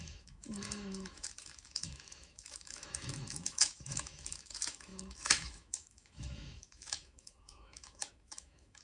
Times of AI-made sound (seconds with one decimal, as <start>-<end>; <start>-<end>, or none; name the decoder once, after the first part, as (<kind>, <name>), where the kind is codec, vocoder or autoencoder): 0.0-8.8 (autoencoder, DAC-VAE)